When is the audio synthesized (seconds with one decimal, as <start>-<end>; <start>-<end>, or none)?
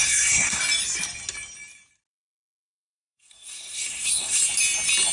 0.0-0.6; 2.1-4.4